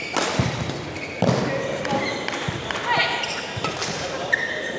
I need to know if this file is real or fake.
real